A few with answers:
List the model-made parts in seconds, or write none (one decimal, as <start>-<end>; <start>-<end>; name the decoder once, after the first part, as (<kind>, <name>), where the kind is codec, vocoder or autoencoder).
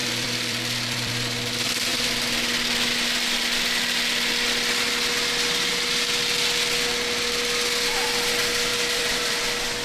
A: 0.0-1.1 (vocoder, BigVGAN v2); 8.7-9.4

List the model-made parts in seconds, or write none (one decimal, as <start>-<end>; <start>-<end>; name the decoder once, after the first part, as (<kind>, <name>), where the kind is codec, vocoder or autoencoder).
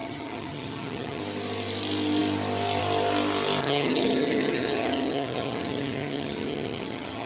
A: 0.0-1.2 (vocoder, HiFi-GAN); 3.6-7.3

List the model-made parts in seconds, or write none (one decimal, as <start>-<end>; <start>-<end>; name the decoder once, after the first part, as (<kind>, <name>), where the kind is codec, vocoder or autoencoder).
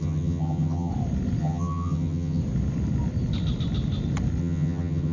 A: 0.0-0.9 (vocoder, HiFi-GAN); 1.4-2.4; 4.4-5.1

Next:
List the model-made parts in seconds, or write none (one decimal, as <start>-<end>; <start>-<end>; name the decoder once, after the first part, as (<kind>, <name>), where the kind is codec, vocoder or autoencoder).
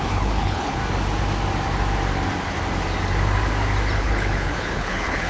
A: 0.0-0.8 (codec, HILCodec); 4.0-5.3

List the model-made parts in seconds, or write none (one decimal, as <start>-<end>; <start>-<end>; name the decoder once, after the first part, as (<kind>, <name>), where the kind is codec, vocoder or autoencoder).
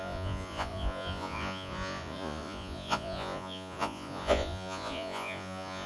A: 0.0-5.9 (vocoder, Vocos)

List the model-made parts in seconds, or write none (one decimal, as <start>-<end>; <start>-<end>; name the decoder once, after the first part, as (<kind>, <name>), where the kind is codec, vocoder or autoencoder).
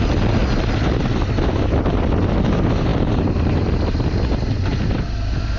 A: none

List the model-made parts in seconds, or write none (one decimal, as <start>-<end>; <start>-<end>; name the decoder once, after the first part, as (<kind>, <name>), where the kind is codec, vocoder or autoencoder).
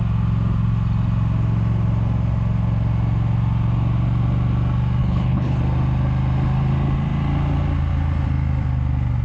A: 5.0-5.6 (codec, HILCodec)